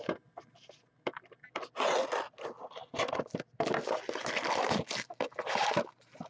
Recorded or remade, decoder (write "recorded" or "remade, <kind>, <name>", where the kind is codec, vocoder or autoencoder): recorded